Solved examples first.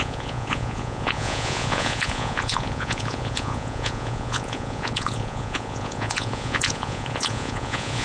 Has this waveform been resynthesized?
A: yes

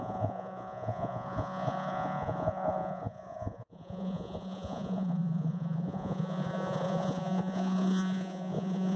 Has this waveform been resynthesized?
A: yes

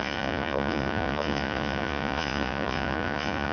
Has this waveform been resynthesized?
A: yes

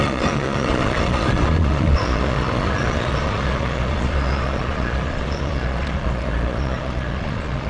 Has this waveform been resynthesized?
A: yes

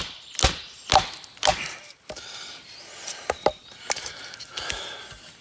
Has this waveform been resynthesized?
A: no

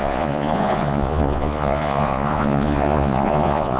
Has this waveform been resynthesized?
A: yes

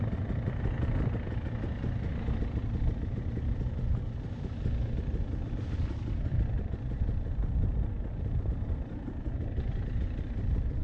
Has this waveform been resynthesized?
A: no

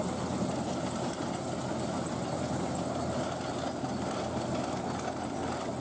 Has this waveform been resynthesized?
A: no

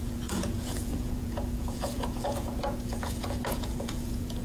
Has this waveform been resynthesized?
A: yes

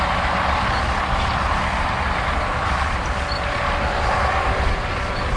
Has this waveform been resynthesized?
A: no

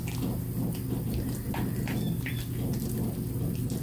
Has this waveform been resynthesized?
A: no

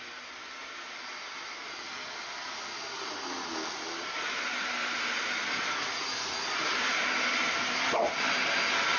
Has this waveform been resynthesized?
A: no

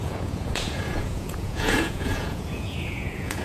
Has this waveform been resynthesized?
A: yes